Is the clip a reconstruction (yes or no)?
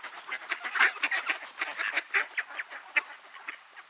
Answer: no